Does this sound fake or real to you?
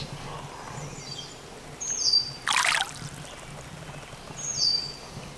real